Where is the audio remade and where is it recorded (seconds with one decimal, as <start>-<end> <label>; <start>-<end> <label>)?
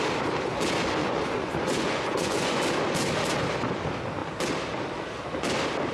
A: 0.0-1.0 recorded; 1.0-2.6 remade; 2.6-5.9 recorded